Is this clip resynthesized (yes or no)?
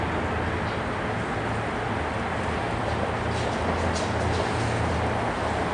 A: no